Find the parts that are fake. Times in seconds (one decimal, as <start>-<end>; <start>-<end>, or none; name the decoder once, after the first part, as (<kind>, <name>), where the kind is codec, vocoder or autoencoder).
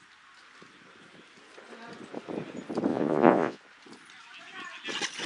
2.9-3.6 (vocoder, Vocos)